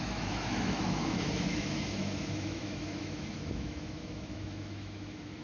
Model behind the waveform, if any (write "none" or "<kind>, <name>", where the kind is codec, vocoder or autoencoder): autoencoder, DAC-VAE